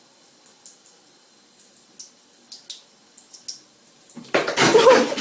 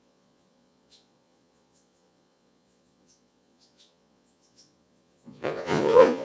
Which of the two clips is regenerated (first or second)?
second